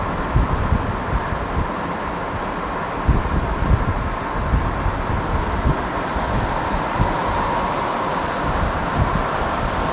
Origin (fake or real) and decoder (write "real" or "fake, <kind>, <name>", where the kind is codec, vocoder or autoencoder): real